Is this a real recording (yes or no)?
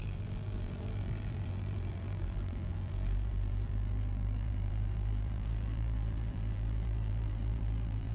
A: no